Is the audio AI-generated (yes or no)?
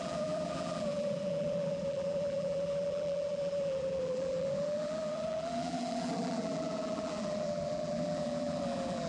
yes